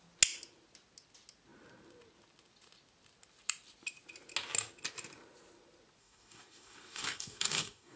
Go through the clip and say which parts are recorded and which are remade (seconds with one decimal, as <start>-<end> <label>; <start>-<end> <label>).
0.0-6.0 recorded; 6.0-8.0 remade